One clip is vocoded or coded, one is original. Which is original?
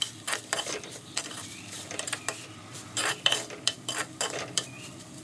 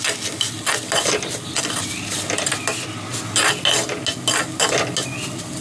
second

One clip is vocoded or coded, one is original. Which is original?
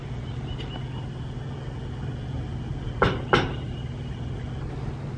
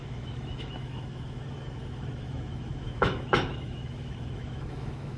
first